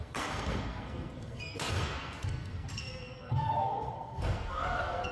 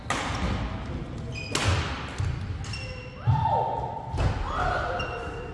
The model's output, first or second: first